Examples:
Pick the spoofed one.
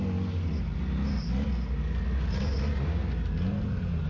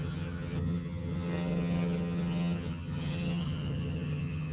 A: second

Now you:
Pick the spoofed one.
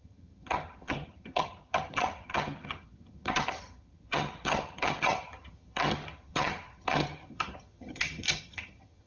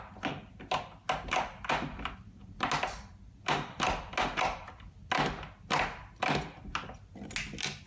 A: first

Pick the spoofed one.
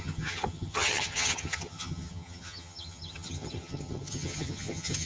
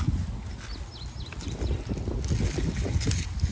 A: first